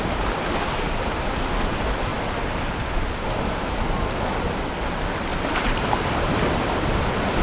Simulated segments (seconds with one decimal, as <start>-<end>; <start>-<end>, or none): 2.1-4.2; 5.3-6.0